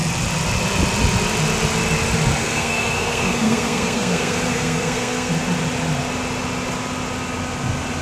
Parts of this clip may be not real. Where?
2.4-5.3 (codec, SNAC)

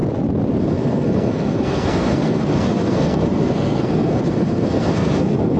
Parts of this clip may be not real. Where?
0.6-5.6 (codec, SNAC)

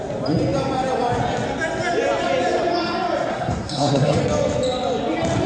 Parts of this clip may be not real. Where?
3.3-4.2 (codec, SNAC)

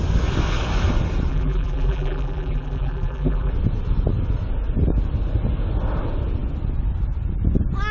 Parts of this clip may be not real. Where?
1.3-3.5 (vocoder, BigVGAN v2)